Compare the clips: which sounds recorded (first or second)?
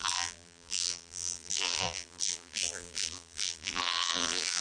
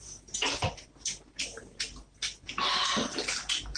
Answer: second